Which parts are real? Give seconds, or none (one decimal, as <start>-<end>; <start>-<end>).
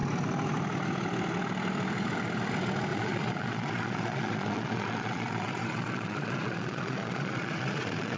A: 0.0-2.9